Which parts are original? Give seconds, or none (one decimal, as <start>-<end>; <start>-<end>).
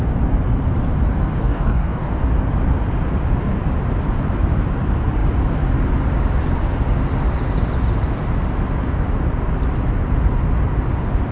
0.0-1.4; 2.1-11.3